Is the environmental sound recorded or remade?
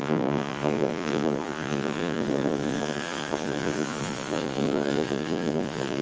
remade